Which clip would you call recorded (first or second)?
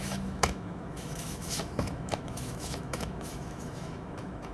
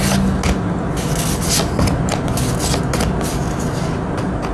second